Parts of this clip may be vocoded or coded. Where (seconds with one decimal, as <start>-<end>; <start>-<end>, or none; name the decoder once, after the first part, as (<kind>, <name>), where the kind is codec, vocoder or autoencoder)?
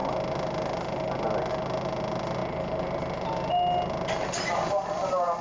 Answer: none